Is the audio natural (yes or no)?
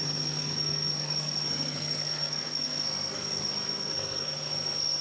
no